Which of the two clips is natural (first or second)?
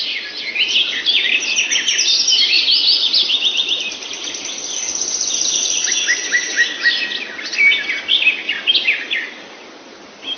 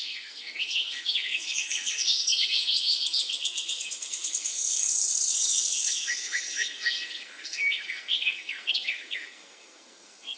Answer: first